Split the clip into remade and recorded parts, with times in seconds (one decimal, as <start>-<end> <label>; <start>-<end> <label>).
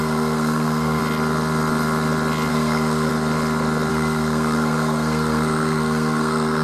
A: 0.0-1.0 remade; 1.0-2.5 recorded; 2.5-3.1 remade; 3.1-3.9 recorded; 3.9-6.6 remade